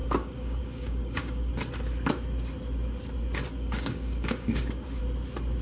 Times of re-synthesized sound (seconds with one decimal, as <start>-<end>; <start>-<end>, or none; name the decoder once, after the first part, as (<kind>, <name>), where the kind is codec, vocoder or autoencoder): 0.0-1.5 (codec, DAC); 3.5-5.0